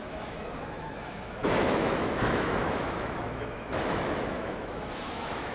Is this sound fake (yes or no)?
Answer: yes